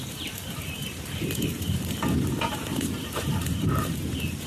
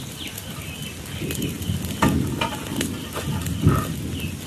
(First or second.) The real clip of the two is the second